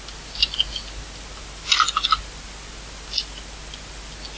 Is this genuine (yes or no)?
yes